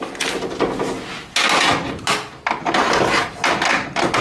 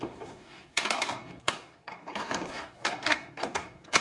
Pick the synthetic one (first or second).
second